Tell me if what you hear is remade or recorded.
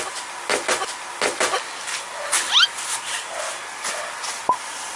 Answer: recorded